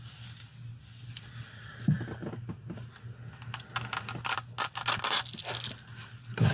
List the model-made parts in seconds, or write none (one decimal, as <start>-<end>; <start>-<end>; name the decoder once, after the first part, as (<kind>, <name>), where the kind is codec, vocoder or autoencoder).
none